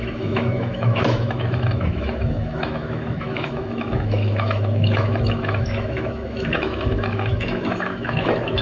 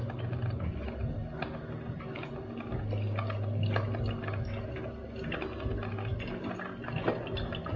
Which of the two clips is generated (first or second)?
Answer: first